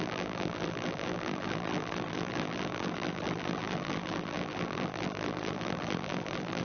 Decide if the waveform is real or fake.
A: fake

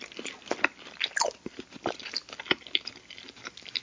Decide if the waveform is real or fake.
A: real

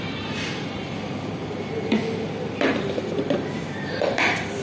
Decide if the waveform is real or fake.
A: fake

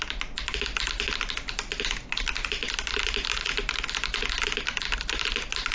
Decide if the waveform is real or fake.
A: real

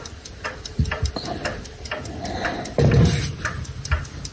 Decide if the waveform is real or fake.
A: fake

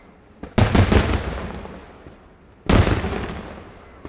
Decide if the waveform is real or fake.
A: real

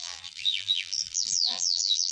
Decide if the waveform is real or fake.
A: fake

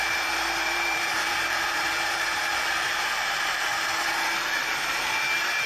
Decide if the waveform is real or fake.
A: fake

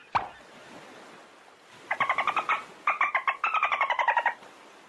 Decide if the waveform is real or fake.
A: real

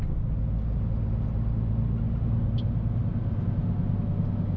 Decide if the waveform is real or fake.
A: real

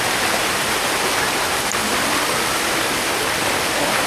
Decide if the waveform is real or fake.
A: real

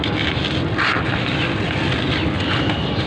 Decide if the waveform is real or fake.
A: real